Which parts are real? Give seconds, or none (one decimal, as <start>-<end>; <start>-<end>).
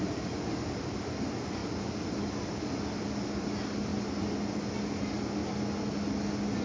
0.0-6.6